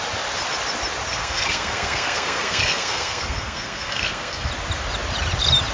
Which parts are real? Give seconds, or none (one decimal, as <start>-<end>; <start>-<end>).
0.0-1.1; 4.5-5.7